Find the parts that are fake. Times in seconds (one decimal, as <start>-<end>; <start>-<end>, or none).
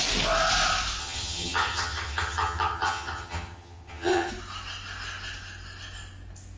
1.0-4.3